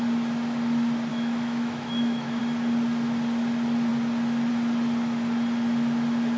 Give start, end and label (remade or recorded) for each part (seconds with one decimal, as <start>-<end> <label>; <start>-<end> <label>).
0.0-1.1 recorded; 1.1-2.4 remade; 2.4-6.4 recorded

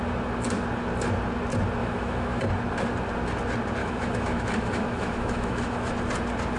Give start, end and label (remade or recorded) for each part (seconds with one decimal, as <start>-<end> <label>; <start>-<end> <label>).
0.0-1.8 recorded; 1.8-2.4 remade; 2.4-3.8 recorded; 3.8-5.9 remade; 5.9-6.6 recorded